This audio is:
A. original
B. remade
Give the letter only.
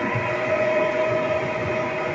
B